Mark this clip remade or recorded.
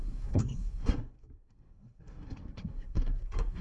remade